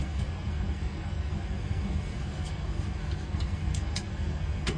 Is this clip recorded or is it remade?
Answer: remade